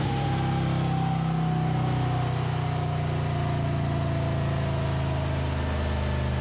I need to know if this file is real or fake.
real